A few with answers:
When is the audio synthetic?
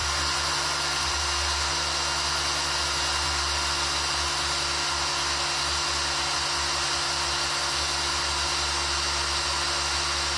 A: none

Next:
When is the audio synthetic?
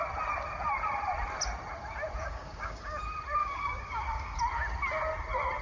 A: 2.2-3.0 (codec, DAC); 3.4-4.4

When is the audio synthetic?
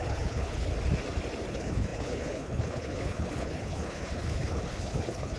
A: 0.0-0.7 (codec, HILCodec); 1.5-5.4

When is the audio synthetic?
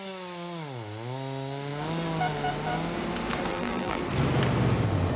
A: 3.5-4.0 (vocoder, BigVGAN v2)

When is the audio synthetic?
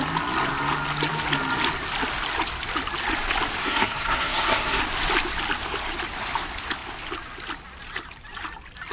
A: 3.6-4.8 (codec, SNAC)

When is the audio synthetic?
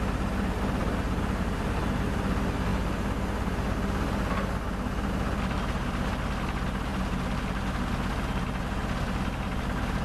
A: 0.8-1.8 (vocoder, BigVGAN v2)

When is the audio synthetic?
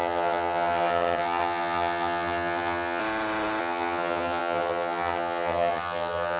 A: 0.0-3.0 (vocoder, HiFi-GAN); 3.6-6.4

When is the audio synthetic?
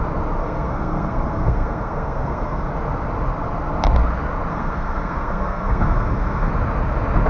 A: 0.4-2.7 (codec, SNAC); 4.5-6.5